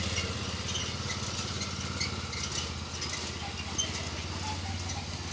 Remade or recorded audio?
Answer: recorded